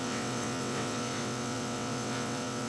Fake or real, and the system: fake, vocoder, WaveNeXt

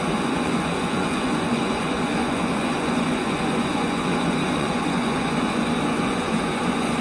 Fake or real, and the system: fake, vocoder, Vocos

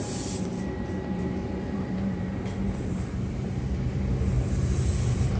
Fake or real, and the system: fake, vocoder, BigVGAN v2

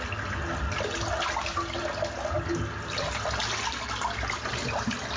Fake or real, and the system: real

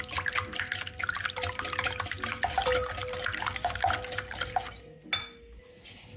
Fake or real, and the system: real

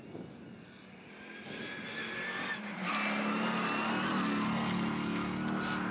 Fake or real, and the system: real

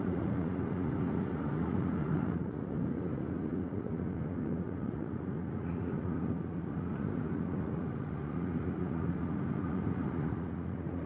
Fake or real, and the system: fake, vocoder, Vocos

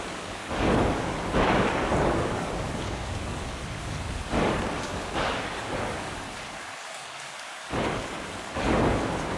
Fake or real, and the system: fake, codec, DAC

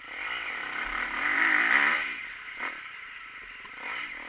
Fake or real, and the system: real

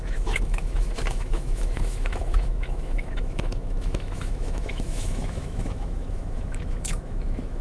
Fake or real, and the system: fake, autoencoder, DAC-VAE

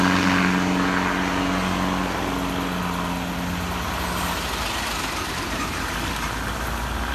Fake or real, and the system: real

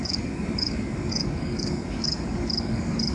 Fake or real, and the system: fake, codec, DAC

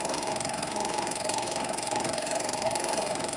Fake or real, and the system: fake, codec, SNAC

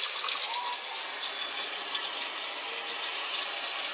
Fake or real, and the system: real